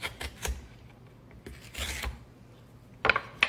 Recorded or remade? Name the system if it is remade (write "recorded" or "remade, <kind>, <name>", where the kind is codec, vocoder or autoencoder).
recorded